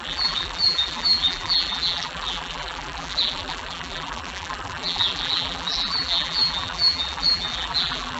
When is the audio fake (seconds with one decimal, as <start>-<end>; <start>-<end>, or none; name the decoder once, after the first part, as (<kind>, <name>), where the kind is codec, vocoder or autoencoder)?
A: 0.0-8.2 (vocoder, BigVGAN v2)